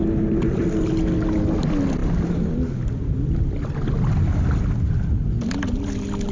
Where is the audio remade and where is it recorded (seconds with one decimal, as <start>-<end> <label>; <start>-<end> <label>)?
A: 0.0-6.3 recorded